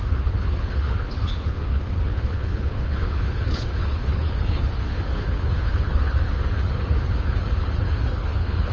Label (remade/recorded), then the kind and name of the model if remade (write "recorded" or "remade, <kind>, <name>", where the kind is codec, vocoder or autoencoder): remade, codec, HILCodec